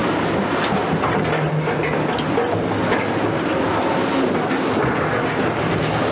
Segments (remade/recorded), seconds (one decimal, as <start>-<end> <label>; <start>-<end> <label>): 0.0-6.1 recorded

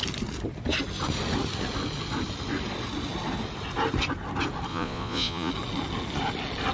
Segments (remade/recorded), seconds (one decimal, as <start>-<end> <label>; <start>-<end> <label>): 0.0-4.7 recorded; 4.7-5.5 remade; 5.5-6.7 recorded

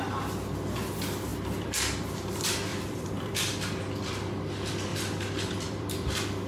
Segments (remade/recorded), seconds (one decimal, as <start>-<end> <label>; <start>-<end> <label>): 0.0-2.7 recorded; 2.7-3.8 remade; 3.8-4.9 recorded; 4.9-6.5 remade